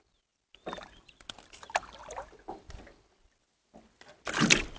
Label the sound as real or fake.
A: real